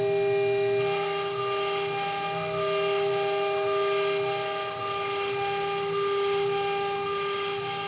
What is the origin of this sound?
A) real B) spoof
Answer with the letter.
A